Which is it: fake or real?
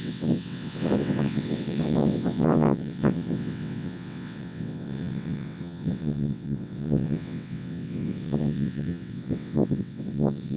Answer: fake